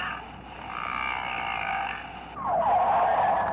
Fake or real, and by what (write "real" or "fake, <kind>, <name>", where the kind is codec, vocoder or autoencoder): real